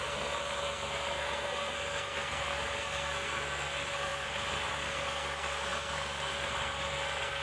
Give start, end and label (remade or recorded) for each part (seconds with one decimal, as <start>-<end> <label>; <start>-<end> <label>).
0.0-7.4 remade